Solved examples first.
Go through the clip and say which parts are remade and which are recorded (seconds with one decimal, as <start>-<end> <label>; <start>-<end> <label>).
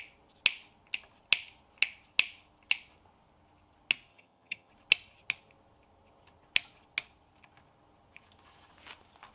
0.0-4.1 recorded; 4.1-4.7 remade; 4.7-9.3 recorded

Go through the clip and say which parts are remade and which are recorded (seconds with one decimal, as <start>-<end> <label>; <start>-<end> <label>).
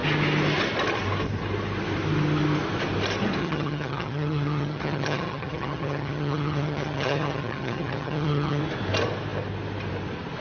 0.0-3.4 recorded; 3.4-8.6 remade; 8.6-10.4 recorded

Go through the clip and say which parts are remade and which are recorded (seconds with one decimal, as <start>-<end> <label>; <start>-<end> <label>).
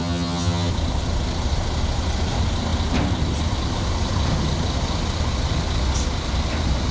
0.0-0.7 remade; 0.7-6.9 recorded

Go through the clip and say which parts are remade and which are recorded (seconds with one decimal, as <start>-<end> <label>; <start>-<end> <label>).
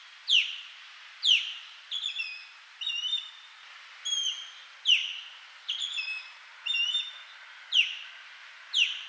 0.0-9.1 recorded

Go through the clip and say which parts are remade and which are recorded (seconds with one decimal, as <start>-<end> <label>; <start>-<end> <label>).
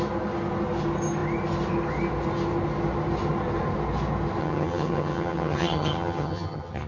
0.0-4.4 recorded; 4.4-6.9 remade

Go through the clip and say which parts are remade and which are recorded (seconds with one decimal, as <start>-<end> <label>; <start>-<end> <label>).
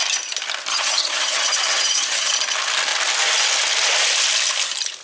0.0-0.7 recorded; 0.7-2.3 remade; 2.3-5.0 recorded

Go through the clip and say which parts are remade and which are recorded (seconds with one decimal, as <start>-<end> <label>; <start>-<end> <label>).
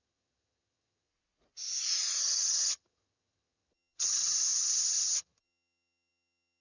0.0-1.1 remade; 1.1-2.2 recorded; 2.2-6.6 remade